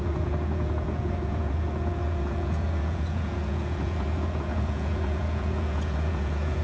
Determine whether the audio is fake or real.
fake